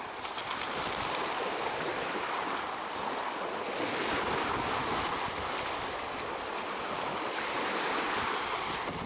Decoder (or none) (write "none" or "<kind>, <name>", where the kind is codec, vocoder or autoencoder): none